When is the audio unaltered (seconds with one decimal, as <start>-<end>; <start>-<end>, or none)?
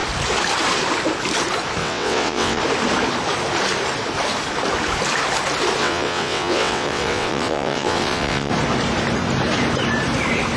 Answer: 0.0-1.8; 2.6-5.8; 8.5-10.6